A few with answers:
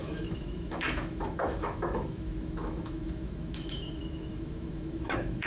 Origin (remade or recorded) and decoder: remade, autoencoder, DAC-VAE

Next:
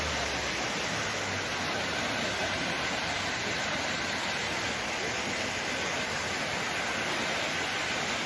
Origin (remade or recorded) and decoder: recorded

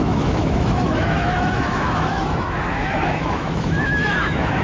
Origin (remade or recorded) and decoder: remade, autoencoder, DAC-VAE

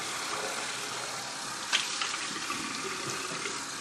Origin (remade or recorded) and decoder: recorded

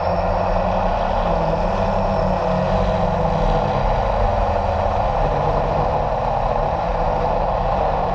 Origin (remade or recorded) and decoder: recorded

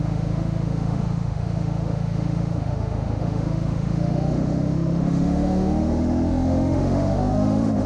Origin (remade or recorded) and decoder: remade, autoencoder, DAC-VAE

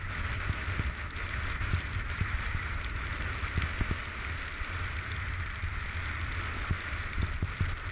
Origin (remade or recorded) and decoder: recorded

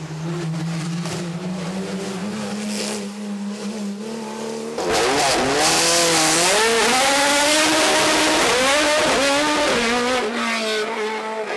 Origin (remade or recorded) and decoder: recorded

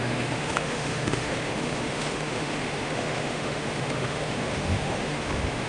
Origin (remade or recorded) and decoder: remade, autoencoder, DAC-VAE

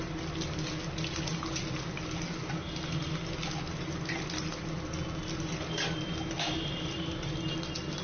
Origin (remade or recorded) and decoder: recorded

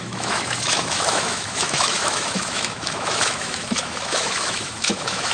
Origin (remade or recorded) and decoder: remade, autoencoder, DAC-VAE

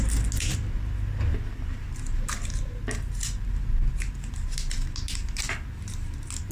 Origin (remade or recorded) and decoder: recorded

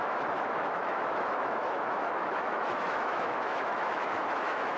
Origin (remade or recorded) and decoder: remade, autoencoder, DAC-VAE